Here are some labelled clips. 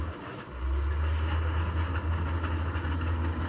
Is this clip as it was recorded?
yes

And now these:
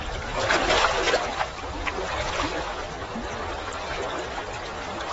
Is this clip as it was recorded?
yes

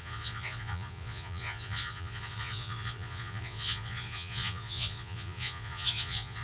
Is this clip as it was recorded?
no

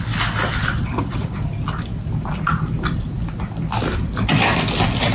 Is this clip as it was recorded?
yes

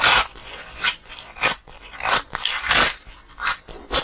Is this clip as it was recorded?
yes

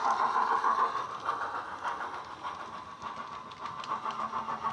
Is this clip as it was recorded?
yes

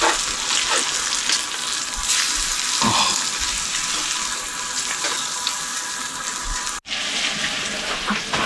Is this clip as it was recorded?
yes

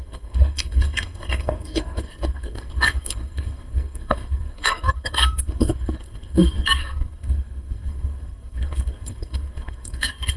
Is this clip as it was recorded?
no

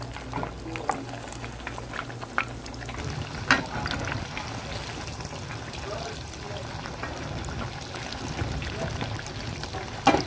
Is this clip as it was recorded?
yes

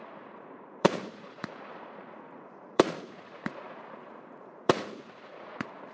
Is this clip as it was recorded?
no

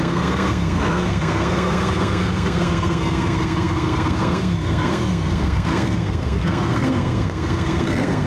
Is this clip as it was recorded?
no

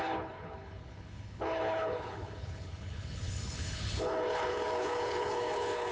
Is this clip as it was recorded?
no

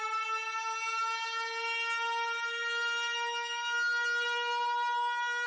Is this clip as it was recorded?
yes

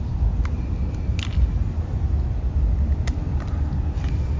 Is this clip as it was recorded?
yes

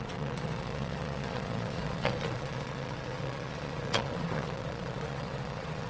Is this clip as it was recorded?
no